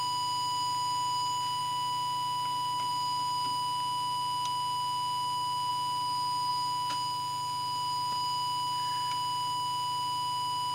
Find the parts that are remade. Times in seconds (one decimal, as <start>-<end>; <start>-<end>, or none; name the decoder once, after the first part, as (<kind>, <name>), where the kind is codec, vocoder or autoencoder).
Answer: none